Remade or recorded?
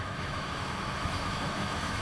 remade